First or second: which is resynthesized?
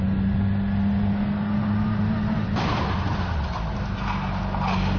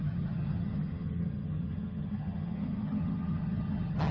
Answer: second